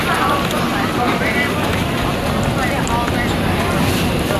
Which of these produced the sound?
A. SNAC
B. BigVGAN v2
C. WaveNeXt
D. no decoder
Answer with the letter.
D